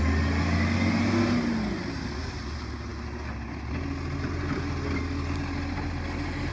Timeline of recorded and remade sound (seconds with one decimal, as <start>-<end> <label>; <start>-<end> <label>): 0.0-6.5 recorded